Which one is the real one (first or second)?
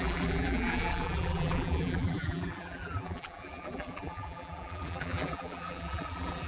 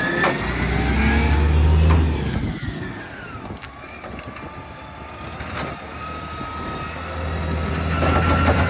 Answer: second